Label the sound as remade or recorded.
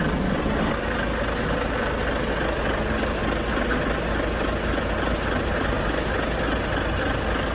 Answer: recorded